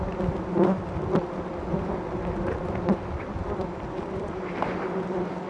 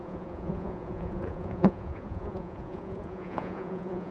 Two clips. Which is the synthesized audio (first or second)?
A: second